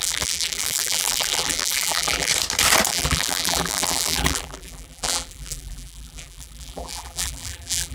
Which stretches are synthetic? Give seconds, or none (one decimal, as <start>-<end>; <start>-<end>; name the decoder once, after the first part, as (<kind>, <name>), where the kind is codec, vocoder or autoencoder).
0.0-2.3 (vocoder, BigVGAN v2); 2.9-7.9